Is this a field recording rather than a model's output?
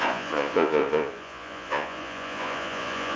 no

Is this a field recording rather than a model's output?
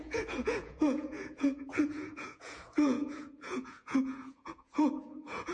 no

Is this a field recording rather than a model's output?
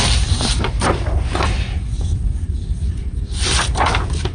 yes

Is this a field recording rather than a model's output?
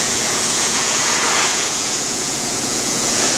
no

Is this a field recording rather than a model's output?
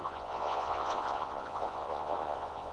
no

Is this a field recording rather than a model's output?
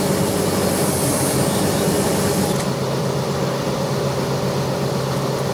yes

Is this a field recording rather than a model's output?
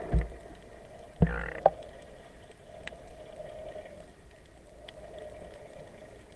yes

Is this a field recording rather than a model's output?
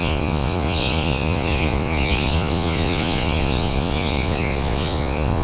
no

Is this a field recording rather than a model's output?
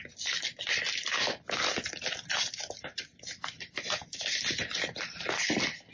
yes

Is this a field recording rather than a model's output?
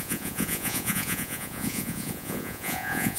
no